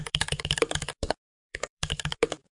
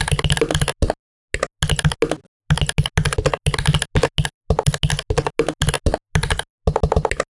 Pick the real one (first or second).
second